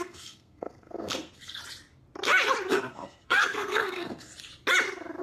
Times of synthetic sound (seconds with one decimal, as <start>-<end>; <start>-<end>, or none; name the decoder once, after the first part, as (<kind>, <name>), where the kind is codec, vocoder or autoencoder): 0.0-1.6 (codec, SNAC); 2.7-4.3